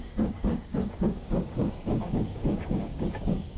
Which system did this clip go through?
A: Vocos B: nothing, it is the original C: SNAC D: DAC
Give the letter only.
D